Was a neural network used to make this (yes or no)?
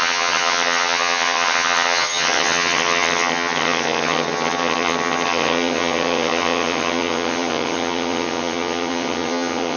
yes